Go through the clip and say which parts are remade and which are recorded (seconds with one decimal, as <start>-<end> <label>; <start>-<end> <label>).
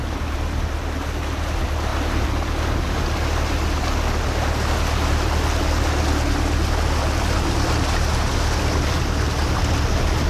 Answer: 0.0-10.3 recorded